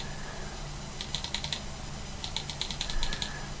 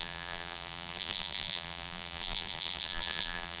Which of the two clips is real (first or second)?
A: first